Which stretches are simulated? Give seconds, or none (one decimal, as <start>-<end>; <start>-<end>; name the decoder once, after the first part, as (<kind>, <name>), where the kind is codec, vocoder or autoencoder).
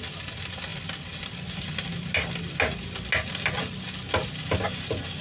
none